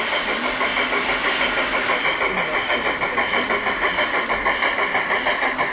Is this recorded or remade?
recorded